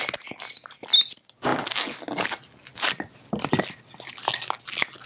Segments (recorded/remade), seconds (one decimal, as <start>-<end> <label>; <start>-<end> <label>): 0.0-5.1 recorded